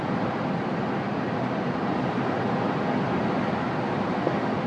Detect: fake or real real